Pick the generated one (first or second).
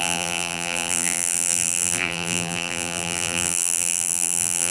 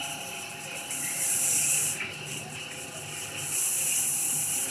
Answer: first